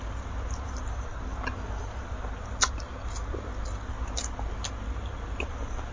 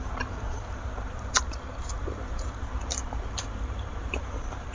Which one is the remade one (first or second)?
second